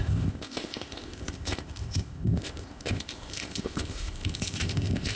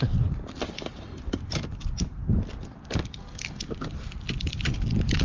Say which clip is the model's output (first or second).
first